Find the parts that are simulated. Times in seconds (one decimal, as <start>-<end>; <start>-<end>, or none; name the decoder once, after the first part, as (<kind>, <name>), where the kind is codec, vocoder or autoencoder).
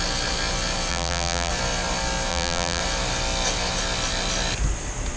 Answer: 0.9-1.5 (vocoder, BigVGAN v2); 2.3-2.8